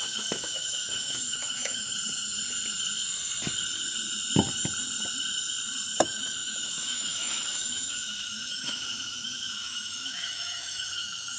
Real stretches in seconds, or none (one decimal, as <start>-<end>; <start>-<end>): 1.9-6.0